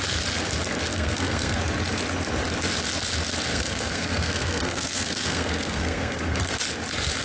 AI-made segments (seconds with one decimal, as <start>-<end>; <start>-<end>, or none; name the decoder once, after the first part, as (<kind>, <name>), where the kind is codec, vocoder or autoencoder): 0.9-1.6 (codec, SNAC); 3.5-6.6